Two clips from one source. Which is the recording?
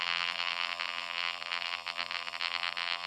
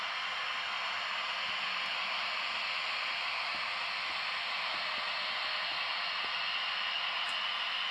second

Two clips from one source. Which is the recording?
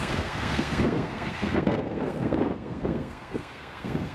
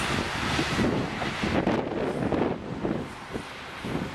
second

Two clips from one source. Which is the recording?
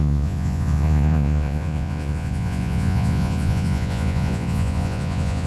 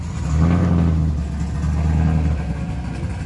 second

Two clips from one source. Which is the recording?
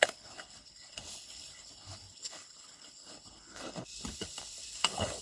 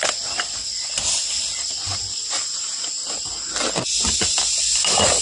second